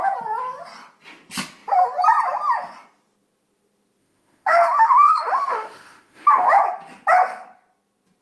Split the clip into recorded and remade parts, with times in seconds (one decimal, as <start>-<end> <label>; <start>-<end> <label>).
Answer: 0.0-4.0 recorded; 4.0-6.6 remade; 6.6-8.2 recorded